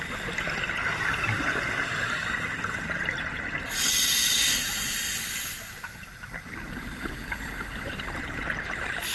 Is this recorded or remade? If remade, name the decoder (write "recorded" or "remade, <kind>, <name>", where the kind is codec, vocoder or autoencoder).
recorded